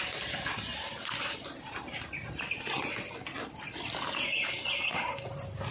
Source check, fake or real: real